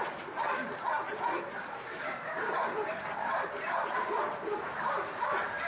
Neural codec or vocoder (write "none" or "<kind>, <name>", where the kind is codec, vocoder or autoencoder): vocoder, BigVGAN v2